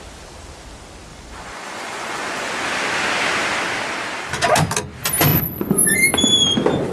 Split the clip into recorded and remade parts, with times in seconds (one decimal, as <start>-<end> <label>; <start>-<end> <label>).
0.0-1.1 recorded; 1.1-2.5 remade; 2.5-5.3 recorded; 5.3-6.0 remade; 6.0-6.9 recorded